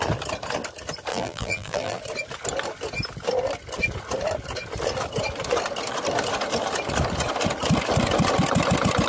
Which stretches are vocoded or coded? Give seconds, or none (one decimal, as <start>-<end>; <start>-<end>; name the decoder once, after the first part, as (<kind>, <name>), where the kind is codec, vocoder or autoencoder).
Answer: 1.1-2.0 (vocoder, BigVGAN v2)